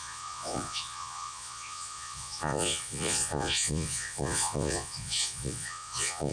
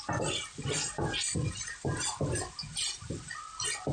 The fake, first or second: first